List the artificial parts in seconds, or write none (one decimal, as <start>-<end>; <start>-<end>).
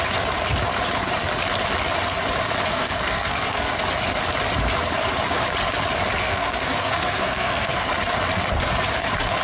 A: 2.7-3.7; 6.2-7.9